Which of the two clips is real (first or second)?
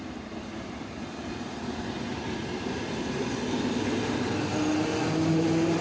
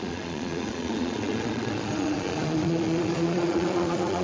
first